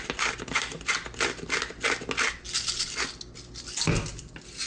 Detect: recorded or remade recorded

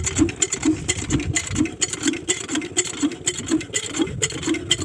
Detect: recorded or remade recorded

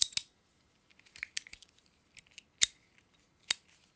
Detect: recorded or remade recorded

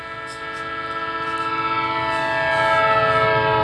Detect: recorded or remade recorded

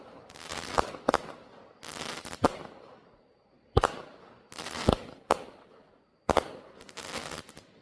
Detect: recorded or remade recorded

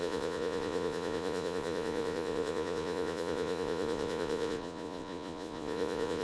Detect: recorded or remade remade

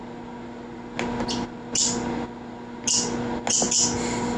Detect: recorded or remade recorded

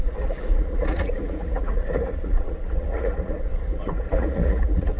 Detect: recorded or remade remade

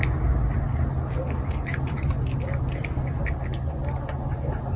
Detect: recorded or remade recorded